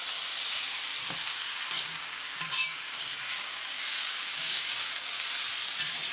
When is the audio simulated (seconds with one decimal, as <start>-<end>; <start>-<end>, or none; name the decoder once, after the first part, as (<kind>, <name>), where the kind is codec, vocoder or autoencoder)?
1.2-4.9 (codec, DAC)

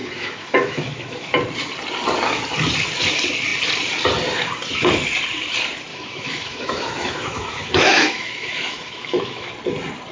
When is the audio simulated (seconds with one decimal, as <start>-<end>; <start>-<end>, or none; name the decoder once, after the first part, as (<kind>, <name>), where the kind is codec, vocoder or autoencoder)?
0.0-1.3 (autoencoder, DAC-VAE); 5.9-9.5

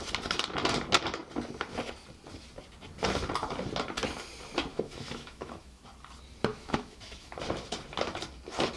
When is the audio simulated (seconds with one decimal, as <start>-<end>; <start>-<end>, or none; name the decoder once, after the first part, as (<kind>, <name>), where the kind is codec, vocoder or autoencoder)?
4.7-5.8 (autoencoder, DAC-VAE); 6.5-7.3